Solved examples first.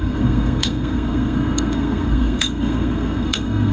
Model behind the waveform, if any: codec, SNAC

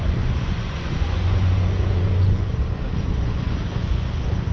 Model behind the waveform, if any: vocoder, Vocos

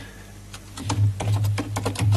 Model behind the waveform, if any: none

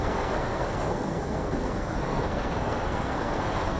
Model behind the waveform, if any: codec, SNAC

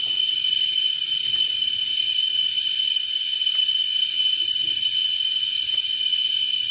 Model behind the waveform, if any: none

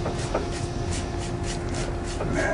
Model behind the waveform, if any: none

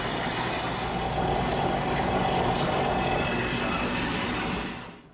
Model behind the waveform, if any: none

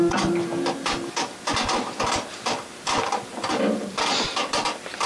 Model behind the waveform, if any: vocoder, BigVGAN v2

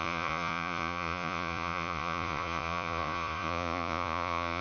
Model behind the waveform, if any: vocoder, Vocos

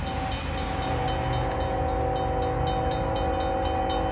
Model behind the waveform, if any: none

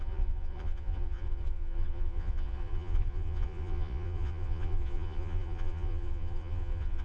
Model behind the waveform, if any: vocoder, Vocos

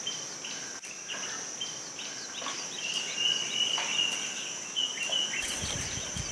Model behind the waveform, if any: none